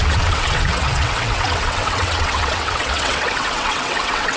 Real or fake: fake